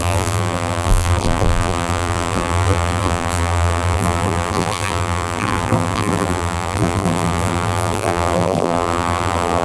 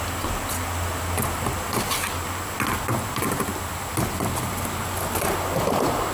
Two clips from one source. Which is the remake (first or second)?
first